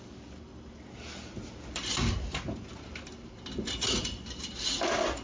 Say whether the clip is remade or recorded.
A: recorded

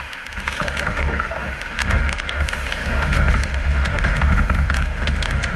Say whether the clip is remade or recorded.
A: remade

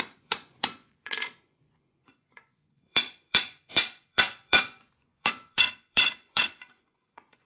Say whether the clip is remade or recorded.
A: remade